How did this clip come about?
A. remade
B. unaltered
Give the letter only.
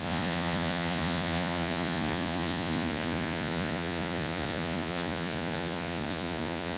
A